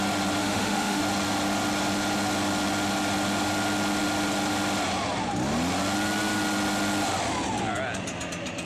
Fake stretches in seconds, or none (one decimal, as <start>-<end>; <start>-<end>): 0.4-1.0